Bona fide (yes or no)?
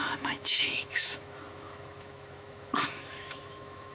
no